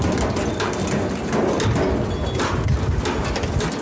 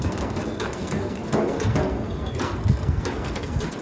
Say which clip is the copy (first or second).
second